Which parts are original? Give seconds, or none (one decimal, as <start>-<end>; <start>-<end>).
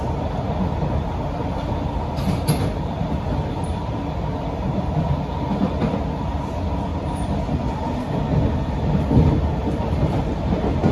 0.0-9.6; 10.2-10.9